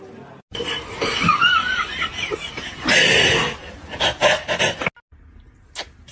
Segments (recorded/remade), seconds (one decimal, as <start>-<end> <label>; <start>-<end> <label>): 0.0-6.1 recorded